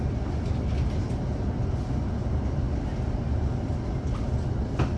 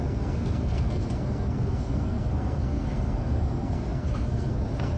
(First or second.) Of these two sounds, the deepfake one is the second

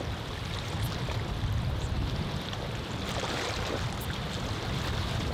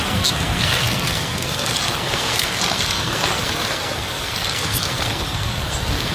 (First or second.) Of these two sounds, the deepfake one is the second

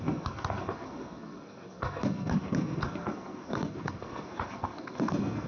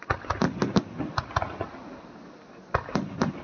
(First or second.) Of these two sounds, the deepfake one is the first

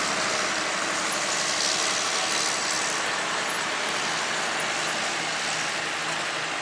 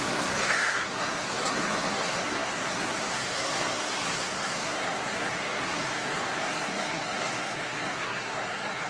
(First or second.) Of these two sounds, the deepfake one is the second